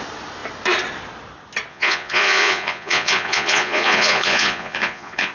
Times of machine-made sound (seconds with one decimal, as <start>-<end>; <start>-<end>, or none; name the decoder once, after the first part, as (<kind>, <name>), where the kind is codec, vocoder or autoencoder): 1.7-5.3 (vocoder, Vocos)